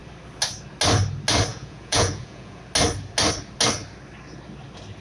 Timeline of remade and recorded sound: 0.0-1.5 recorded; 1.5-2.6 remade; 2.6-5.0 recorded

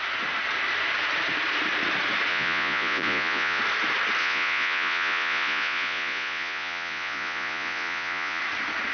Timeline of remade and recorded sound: 0.0-2.3 recorded; 2.3-3.6 remade; 3.6-4.2 recorded; 4.2-8.4 remade; 8.4-8.9 recorded

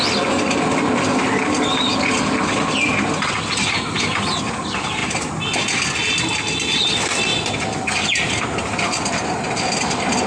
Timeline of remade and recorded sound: 0.0-10.3 recorded

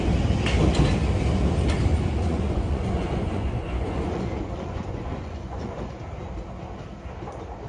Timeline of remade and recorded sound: 0.0-1.9 recorded; 1.9-5.9 remade; 5.9-7.7 recorded

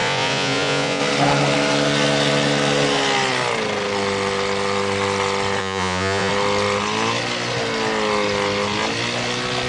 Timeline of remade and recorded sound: 0.0-1.0 remade; 1.0-5.6 recorded; 5.6-6.3 remade; 6.3-9.7 recorded

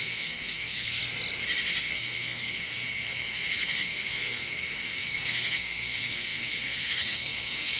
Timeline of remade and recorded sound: 0.0-1.0 remade; 1.0-1.8 recorded; 1.8-7.8 remade

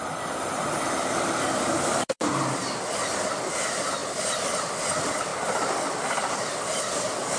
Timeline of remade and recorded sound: 0.0-2.3 remade; 2.3-2.9 recorded; 2.9-4.0 remade; 4.0-4.6 recorded; 4.6-5.3 remade; 5.3-6.0 recorded; 6.0-7.4 remade

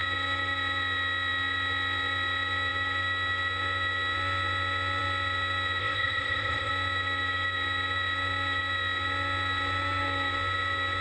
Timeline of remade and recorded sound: 0.0-5.8 recorded; 5.8-6.7 remade; 6.7-11.0 recorded